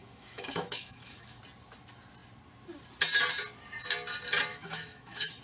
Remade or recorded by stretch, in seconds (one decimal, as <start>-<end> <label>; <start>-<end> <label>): 0.0-1.4 remade; 1.4-4.5 recorded; 4.5-5.4 remade